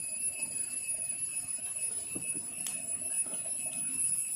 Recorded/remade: recorded